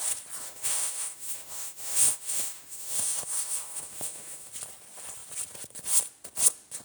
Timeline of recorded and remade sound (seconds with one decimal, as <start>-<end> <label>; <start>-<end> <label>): 0.0-0.4 recorded; 0.4-4.5 remade; 4.5-6.8 recorded